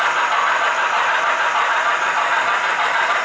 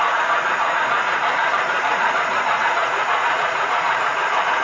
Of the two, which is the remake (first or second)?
second